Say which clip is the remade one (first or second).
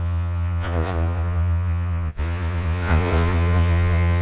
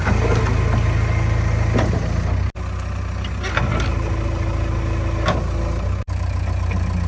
first